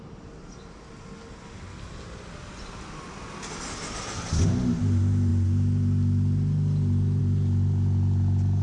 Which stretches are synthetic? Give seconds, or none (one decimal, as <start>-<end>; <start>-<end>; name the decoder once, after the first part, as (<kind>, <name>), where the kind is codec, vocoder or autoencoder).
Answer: none